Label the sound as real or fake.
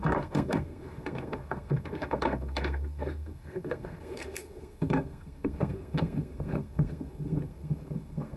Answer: fake